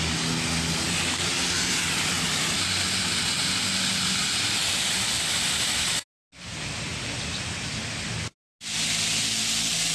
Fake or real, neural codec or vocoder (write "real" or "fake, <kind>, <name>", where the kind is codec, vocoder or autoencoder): real